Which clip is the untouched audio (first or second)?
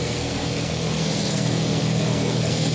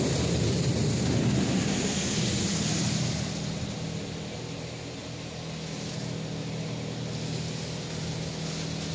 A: second